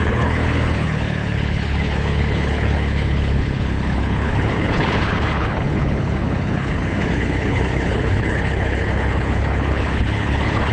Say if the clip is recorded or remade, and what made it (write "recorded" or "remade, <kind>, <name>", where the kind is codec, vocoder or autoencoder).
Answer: remade, codec, HILCodec